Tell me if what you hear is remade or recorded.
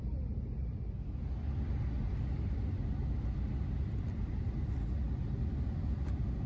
recorded